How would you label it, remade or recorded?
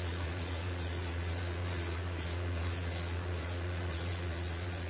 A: remade